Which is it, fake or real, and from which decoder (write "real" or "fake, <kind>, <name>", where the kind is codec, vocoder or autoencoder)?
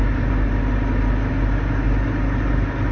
real